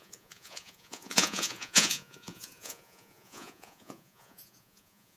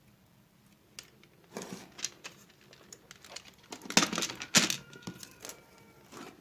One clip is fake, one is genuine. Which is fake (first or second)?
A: first